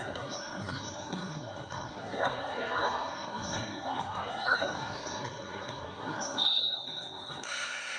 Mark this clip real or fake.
fake